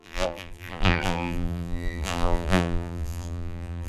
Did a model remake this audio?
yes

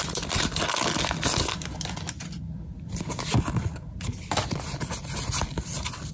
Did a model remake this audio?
no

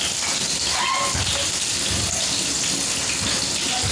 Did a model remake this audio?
no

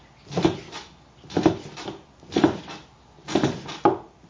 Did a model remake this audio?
no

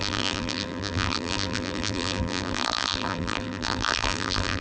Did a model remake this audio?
yes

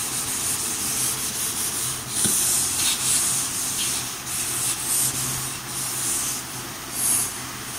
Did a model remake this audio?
no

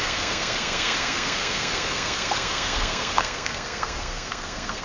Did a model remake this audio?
yes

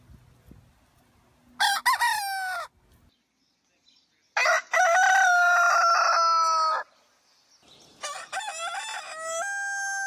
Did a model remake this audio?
no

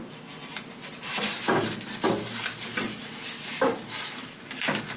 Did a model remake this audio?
no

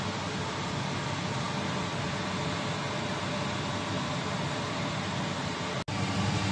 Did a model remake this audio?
no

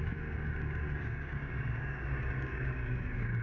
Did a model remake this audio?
yes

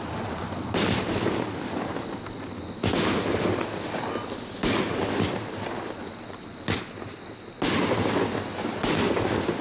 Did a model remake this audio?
no